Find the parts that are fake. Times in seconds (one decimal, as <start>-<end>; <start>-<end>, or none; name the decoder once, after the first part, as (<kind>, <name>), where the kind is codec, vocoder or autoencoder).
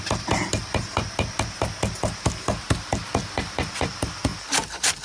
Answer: none